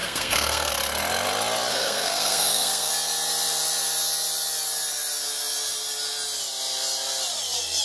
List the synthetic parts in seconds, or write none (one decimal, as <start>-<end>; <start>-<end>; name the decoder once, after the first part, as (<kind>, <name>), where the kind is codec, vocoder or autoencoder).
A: 0.0-0.7 (codec, SNAC); 1.7-2.9

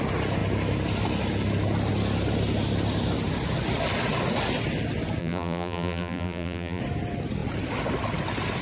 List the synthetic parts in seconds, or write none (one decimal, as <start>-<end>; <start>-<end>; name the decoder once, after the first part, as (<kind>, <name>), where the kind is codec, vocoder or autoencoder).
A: 5.2-6.8 (vocoder, BigVGAN v2)

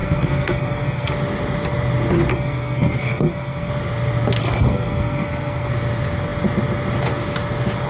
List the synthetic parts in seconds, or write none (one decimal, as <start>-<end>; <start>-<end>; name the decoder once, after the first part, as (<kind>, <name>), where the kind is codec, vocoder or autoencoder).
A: 0.0-1.1 (codec, SNAC); 2.3-3.7; 4.4-5.7

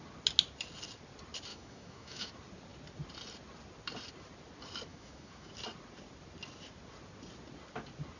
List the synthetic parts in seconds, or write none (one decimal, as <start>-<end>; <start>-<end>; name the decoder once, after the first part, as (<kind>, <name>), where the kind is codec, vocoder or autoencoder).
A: 1.5-2.3 (autoencoder, DAC-VAE); 4.9-5.5

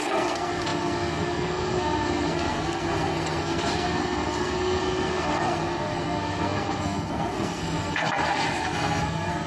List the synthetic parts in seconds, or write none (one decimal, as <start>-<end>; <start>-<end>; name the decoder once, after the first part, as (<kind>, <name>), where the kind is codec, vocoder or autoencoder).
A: 0.0-9.5 (codec, SNAC)

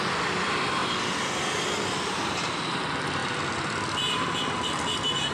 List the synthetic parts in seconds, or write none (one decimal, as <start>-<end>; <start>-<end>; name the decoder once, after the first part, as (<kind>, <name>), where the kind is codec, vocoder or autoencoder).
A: 0.8-2.5 (vocoder, BigVGAN v2)